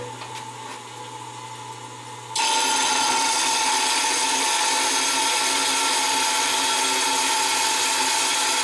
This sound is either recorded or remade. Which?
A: recorded